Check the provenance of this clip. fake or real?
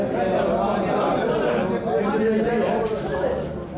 real